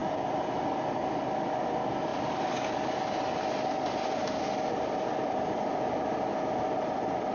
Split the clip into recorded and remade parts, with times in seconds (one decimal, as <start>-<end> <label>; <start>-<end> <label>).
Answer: 0.0-7.3 recorded